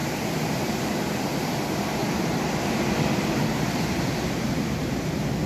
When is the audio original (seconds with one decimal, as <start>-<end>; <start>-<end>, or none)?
0.7-2.0; 4.4-5.5